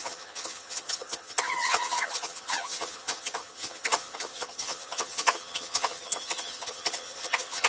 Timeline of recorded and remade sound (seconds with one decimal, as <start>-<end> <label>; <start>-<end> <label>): 0.0-7.7 remade

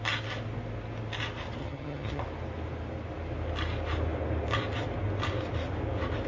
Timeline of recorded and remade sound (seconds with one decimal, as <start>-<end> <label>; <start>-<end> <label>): 0.0-1.6 recorded; 1.6-2.2 remade; 2.2-6.3 recorded

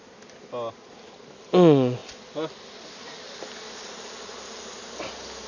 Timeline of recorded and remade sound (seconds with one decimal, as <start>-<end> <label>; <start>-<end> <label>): 0.0-5.5 recorded

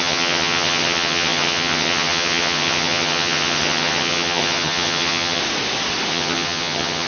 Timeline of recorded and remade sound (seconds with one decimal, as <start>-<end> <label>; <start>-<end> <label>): 0.0-5.4 remade; 5.4-6.1 recorded; 6.1-7.1 remade

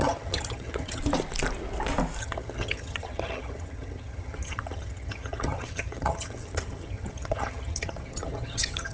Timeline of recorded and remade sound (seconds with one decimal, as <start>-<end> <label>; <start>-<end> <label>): 0.0-1.0 remade; 1.0-2.2 recorded; 2.2-8.9 remade

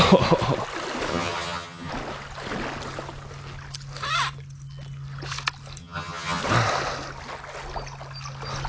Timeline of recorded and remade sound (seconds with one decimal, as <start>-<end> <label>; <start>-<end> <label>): 0.0-1.1 recorded; 1.1-1.9 remade; 1.9-5.8 recorded; 5.8-6.4 remade; 6.4-8.7 recorded

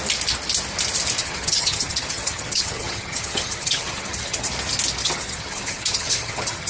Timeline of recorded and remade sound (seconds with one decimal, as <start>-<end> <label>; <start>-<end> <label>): 0.0-1.2 recorded; 1.2-4.5 remade; 4.5-5.0 recorded; 5.0-6.7 remade